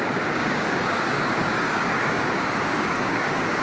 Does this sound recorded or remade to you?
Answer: remade